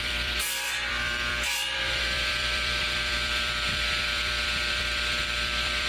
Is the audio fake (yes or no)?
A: yes